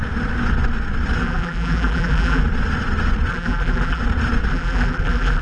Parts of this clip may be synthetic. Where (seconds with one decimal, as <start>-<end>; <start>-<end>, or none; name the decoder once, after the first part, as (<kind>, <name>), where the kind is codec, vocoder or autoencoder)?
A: 1.2-2.4 (vocoder, BigVGAN v2); 3.3-4.0; 4.5-5.4